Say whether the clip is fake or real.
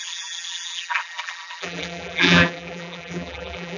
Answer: fake